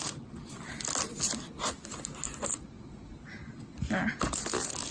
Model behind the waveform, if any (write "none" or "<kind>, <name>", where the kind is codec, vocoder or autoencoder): none